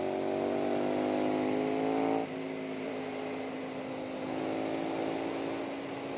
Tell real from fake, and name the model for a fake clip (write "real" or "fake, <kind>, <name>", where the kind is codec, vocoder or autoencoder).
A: real